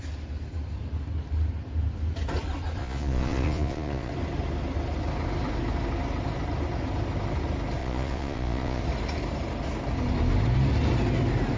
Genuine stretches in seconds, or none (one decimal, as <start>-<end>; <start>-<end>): 0.0-2.8; 4.1-7.8; 8.8-11.6